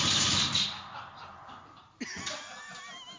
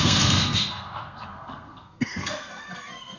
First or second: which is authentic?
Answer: first